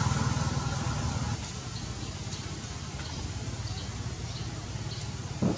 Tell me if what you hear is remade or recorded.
recorded